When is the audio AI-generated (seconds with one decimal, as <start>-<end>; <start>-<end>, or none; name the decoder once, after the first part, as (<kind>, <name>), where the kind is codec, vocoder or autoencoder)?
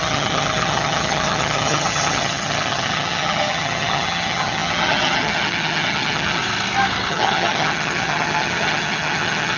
0.0-6.4 (vocoder, HiFi-GAN); 7.1-9.6